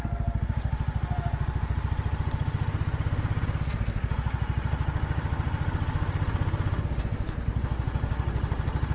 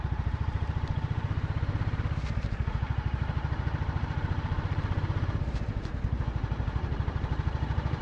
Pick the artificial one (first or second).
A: second